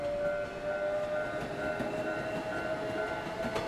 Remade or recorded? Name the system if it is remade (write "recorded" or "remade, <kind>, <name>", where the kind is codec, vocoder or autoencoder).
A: recorded